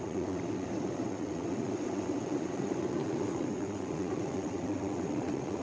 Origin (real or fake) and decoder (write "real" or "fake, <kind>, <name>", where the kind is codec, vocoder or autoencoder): fake, vocoder, WaveNeXt